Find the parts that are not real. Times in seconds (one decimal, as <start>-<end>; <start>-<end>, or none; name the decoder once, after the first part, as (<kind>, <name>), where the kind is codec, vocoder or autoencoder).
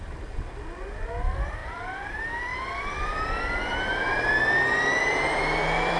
1.6-2.1 (vocoder, BigVGAN v2); 2.5-6.0